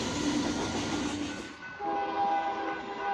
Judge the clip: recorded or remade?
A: recorded